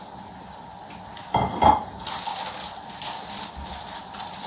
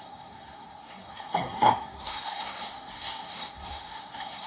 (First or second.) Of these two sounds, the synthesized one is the second